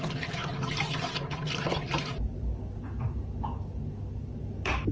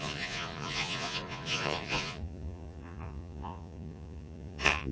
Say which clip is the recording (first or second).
first